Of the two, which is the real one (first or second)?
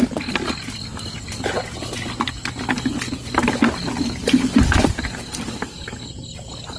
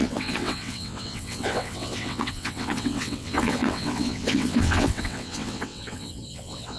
first